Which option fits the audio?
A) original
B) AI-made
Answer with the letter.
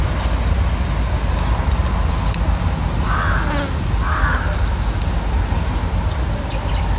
A